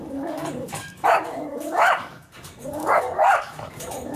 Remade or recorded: remade